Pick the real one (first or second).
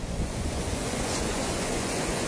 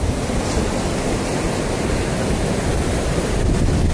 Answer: second